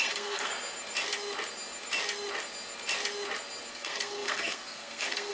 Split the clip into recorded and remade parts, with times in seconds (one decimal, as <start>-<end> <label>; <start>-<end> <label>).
0.0-0.5 remade; 0.5-3.7 recorded; 3.7-5.3 remade